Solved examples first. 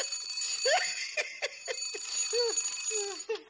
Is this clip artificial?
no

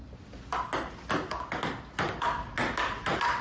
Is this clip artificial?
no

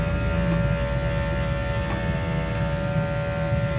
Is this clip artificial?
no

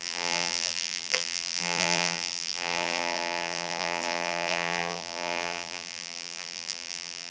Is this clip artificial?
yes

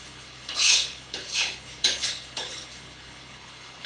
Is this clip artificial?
yes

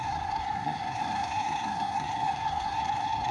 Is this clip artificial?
yes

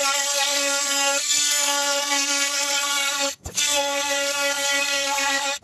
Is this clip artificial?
yes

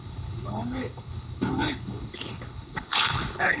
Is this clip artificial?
yes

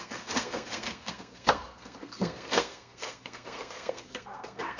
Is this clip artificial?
yes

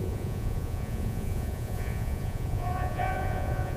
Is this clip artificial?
yes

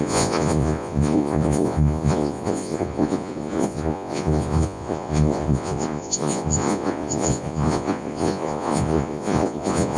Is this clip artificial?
yes